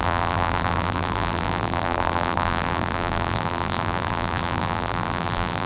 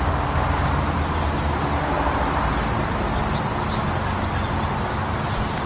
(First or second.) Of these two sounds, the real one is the second